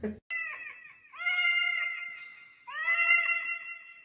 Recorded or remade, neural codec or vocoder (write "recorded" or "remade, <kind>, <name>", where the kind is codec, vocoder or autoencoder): recorded